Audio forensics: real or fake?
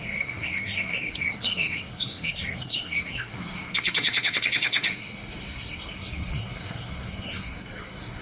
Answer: fake